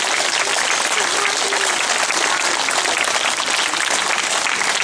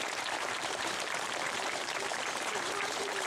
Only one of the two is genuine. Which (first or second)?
first